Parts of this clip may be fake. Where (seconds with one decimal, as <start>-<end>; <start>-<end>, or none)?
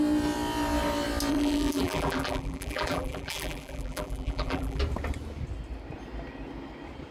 1.3-4.8